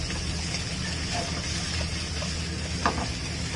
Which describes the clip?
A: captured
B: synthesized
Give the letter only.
A